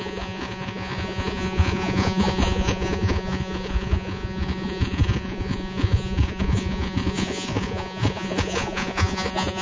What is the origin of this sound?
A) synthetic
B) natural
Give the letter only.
A